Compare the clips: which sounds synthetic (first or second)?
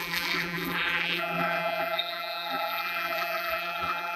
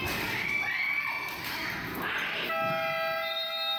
first